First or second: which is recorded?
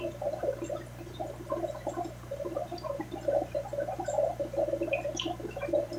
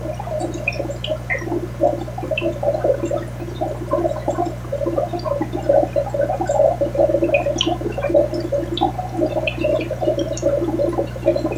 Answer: second